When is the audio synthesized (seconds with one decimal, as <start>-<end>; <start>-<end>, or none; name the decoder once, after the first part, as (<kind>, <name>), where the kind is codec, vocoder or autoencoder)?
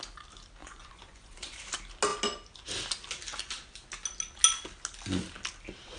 0.6-1.6 (vocoder, Vocos)